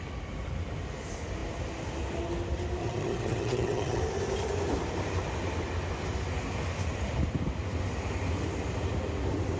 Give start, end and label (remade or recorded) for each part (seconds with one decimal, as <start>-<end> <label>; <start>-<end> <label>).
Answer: 0.0-2.8 recorded; 2.8-4.0 remade; 4.0-9.6 recorded